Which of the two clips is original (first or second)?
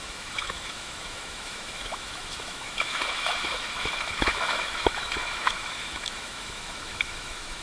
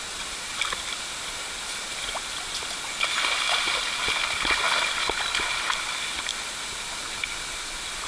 second